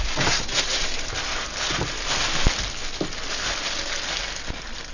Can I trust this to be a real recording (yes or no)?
yes